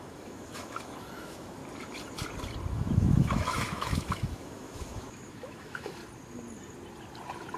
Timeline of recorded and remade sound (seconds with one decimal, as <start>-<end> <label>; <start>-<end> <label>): 0.0-1.6 remade; 1.6-2.7 recorded; 2.7-6.0 remade; 6.0-7.6 recorded